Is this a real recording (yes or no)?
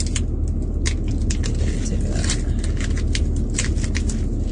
yes